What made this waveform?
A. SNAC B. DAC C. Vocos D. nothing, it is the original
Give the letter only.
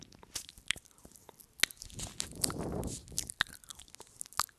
D